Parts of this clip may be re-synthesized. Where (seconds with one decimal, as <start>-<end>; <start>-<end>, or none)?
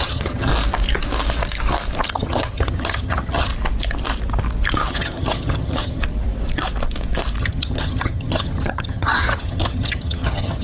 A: 0.0-0.5; 2.1-3.5; 4.9-6.0; 7.4-10.6